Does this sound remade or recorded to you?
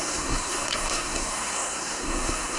remade